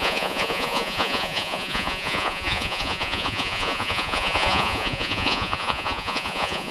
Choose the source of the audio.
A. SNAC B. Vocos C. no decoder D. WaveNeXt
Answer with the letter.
B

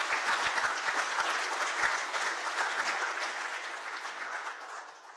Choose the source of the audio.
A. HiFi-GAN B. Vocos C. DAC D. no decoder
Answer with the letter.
B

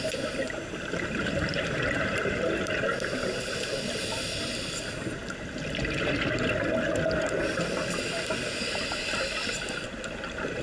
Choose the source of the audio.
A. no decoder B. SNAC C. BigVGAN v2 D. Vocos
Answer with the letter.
A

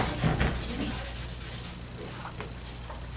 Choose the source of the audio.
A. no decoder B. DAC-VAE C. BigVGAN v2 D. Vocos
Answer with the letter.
A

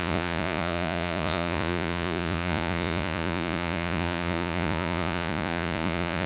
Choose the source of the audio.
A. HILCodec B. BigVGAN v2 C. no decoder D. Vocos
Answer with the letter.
D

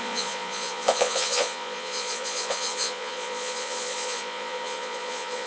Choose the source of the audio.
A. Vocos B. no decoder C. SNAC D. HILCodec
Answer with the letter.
A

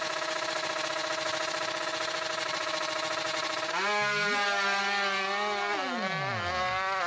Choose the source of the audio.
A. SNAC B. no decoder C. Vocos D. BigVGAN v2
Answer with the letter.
B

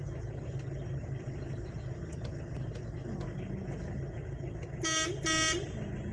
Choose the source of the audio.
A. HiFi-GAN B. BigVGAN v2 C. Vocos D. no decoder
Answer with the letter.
D